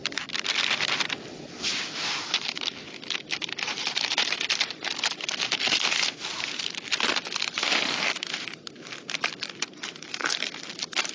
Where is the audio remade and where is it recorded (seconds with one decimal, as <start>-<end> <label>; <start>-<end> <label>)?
0.0-9.8 recorded; 9.8-10.5 remade; 10.5-11.1 recorded